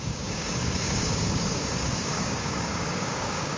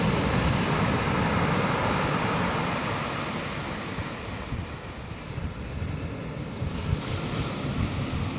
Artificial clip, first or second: first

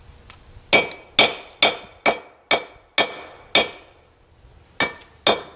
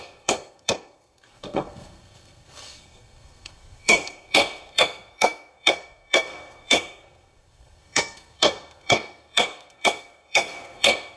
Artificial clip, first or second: second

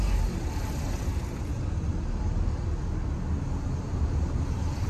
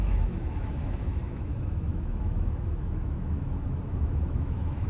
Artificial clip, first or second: second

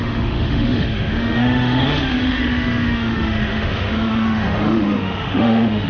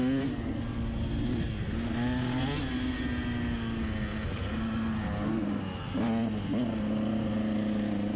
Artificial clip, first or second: first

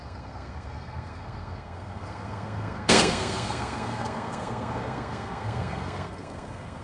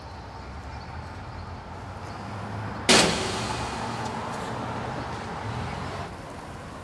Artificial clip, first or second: first